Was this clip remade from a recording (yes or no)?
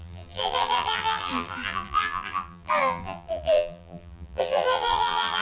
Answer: yes